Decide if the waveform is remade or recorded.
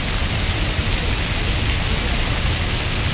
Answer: recorded